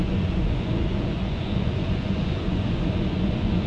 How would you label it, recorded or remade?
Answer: remade